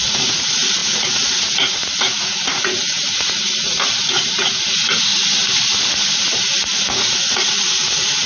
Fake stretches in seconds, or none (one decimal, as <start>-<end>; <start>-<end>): 0.0-5.1; 7.1-8.3